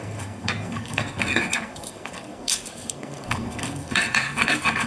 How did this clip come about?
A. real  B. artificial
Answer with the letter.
B